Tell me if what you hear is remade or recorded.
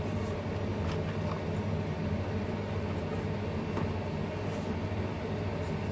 recorded